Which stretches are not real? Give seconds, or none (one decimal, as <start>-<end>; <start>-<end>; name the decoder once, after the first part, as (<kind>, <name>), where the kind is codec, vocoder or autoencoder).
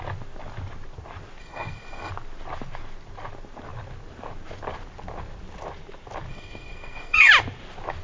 1.4-2.1 (codec, SNAC); 6.3-7.3